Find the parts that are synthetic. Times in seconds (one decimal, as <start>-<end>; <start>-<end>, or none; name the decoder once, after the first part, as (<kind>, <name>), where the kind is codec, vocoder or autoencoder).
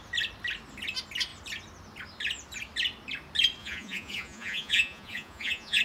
3.6-5.8 (vocoder, Vocos)